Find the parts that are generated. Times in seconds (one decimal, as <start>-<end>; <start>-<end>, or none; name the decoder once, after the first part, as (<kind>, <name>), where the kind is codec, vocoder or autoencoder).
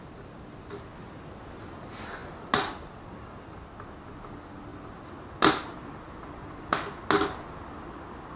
4.7-5.3 (vocoder, BigVGAN v2)